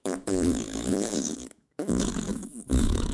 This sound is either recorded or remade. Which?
remade